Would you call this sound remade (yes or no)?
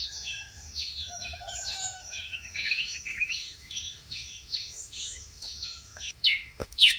yes